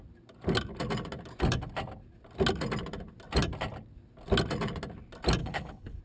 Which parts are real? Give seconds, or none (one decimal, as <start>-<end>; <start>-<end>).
0.0-5.4